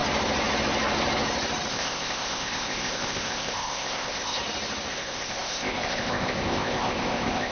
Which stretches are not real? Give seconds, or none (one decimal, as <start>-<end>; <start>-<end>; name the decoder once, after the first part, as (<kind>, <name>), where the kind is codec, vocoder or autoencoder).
1.7-4.4 (codec, ZipCodec); 4.9-7.5